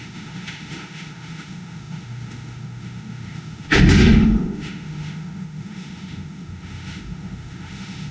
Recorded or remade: remade